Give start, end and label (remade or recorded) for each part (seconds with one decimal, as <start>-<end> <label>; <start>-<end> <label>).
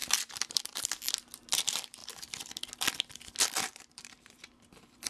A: 0.0-0.9 remade; 0.9-3.7 recorded; 3.7-4.5 remade; 4.5-5.1 recorded